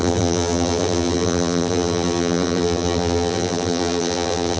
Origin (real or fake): fake